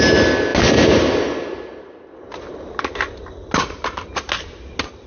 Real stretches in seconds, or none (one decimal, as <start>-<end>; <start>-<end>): 0.0-5.1